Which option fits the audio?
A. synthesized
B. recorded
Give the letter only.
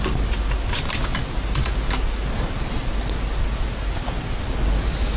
B